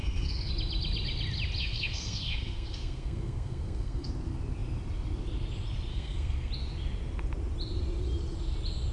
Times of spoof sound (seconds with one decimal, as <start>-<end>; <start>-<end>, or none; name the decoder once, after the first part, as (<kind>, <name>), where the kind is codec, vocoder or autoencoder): 0.0-0.5 (codec, SNAC); 1.6-4.1; 5.9-6.5